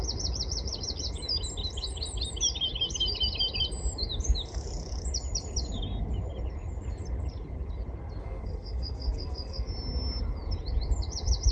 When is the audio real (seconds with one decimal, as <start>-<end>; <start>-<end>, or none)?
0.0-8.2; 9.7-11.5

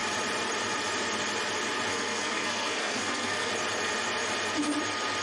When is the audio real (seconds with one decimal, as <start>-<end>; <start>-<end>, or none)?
0.0-1.9; 3.5-5.2

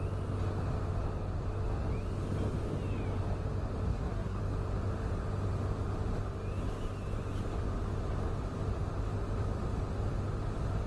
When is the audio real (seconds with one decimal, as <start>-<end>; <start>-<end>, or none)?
0.0-3.9; 4.4-10.9

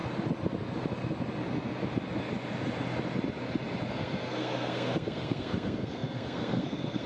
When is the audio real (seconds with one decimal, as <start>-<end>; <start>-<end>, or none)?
0.0-3.9